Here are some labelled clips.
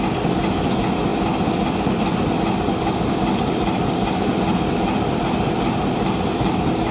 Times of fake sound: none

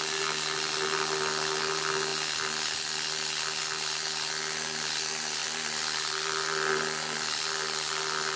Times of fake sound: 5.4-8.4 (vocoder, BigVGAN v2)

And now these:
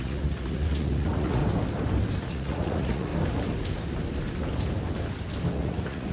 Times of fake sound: 0.0-1.4 (vocoder, Vocos); 2.2-3.1; 5.5-6.1

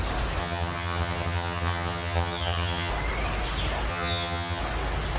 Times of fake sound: 0.4-2.9 (vocoder, HiFi-GAN); 3.9-4.6

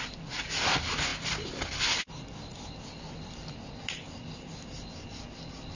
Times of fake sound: none